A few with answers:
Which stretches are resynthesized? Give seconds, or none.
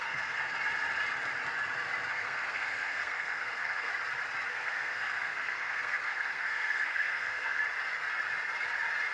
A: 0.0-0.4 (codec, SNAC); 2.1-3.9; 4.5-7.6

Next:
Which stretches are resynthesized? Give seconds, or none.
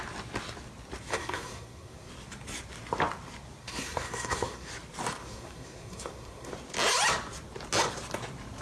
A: 1.1-2.1 (codec, SNAC); 3.6-4.7; 5.2-6.5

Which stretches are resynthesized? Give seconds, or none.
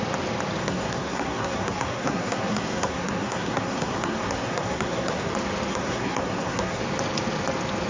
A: 0.6-5.3 (codec, SNAC); 5.7-6.8